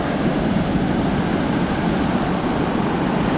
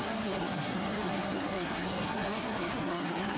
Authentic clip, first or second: first